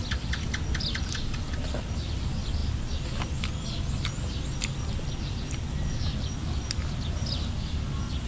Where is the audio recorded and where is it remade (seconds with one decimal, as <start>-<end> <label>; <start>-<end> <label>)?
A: 0.0-8.3 recorded